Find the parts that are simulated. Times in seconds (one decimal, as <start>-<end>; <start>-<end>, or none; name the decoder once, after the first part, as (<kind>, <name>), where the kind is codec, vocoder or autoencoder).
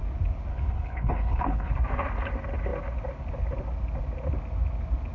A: 0.5-1.7 (codec, HILCodec)